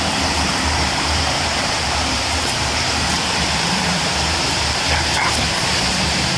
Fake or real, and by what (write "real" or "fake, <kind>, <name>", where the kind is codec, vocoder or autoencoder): fake, vocoder, BigVGAN v2